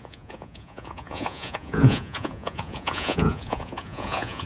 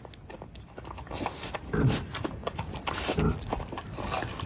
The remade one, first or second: first